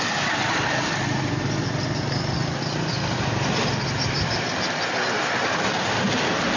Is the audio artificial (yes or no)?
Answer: no